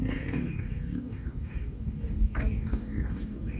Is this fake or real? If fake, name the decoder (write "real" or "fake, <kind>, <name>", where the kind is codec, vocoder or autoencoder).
fake, codec, DAC